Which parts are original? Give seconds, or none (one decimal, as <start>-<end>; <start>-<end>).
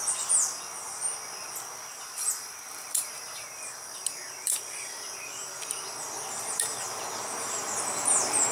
0.0-1.9; 4.2-6.4